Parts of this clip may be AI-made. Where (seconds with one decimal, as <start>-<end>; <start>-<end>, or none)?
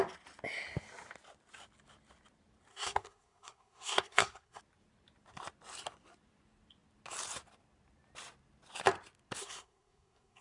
2.7-4.6; 9.4-10.4